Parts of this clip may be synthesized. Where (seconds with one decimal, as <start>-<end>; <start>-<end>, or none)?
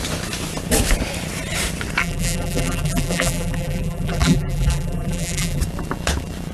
2.0-5.6